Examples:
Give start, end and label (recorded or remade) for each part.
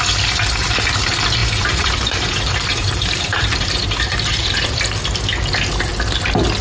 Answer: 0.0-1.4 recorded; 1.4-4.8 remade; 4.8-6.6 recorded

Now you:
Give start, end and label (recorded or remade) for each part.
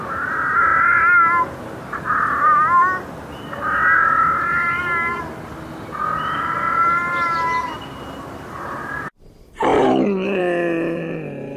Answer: 0.0-9.7 recorded; 9.7-10.4 remade; 10.4-11.6 recorded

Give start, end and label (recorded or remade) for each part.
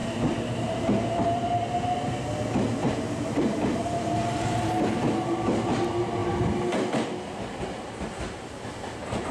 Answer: 0.0-1.5 remade; 1.5-2.8 recorded; 2.8-5.1 remade; 5.1-9.3 recorded